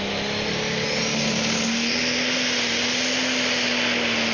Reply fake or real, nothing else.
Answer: real